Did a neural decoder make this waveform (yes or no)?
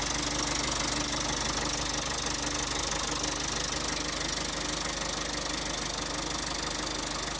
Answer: no